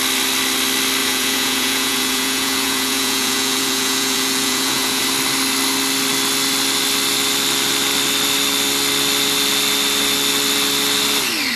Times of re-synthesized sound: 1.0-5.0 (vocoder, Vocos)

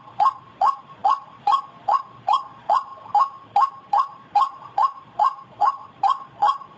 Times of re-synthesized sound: 0.0-2.9 (vocoder, Vocos); 3.9-6.8